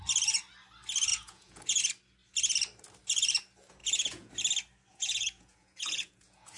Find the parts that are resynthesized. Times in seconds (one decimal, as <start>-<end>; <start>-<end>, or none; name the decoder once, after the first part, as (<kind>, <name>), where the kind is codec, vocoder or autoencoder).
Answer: 1.1-1.8 (vocoder, Vocos); 3.8-4.3; 4.9-6.6

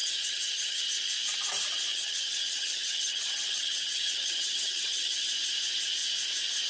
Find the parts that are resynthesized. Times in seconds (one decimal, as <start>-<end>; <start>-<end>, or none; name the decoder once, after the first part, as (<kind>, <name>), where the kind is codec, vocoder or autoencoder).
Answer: 0.0-0.8 (vocoder, HiFi-GAN); 1.9-5.3

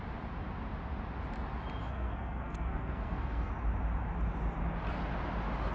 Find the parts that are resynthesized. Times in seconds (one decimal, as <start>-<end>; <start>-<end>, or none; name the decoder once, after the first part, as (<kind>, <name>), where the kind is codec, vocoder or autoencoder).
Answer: 1.8-3.5 (codec, SNAC)

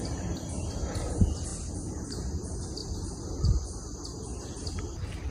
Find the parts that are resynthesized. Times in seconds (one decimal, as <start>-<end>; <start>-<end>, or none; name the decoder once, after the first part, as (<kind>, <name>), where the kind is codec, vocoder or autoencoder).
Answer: none

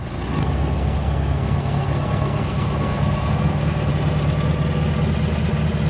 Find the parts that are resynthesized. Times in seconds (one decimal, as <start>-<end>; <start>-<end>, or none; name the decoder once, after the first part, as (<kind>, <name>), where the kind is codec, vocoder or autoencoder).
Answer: 0.4-3.9 (codec, SNAC)

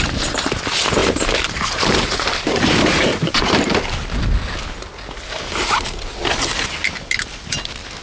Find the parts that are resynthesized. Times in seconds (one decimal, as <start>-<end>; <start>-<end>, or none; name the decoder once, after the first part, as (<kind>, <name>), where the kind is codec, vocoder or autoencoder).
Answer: 1.0-3.5 (vocoder, BigVGAN v2)